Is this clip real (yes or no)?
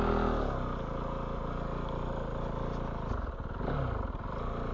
yes